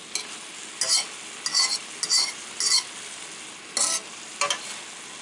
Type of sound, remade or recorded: recorded